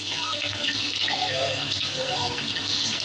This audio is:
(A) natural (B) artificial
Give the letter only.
B